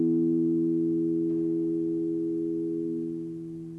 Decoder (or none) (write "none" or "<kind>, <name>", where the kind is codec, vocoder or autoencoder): none